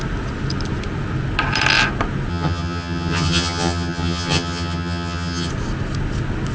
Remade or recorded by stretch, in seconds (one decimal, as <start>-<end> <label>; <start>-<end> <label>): 0.0-2.3 recorded; 2.3-5.5 remade; 5.5-6.5 recorded